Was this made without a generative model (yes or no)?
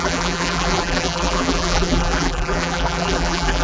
no